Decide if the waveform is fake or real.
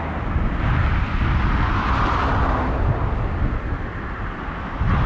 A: real